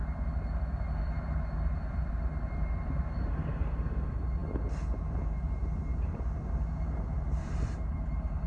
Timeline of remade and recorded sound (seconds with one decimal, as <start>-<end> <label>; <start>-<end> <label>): 0.0-4.4 remade; 4.4-5.0 recorded; 5.0-8.5 remade